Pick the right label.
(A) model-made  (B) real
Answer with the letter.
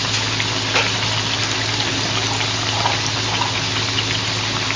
B